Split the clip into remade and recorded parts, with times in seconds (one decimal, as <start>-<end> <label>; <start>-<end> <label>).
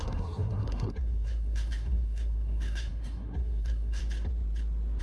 0.0-4.0 remade; 4.0-5.0 recorded